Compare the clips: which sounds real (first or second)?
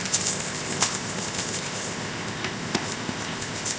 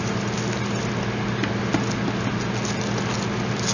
second